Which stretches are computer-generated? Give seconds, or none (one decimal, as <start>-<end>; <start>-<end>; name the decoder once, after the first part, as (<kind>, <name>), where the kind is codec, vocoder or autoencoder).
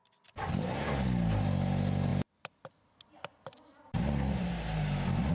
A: none